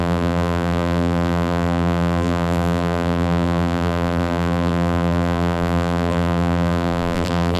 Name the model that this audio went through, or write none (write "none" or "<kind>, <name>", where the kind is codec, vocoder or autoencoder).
vocoder, BigVGAN v2